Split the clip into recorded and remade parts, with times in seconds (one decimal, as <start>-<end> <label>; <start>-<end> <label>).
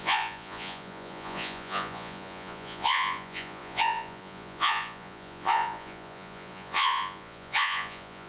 0.0-8.3 remade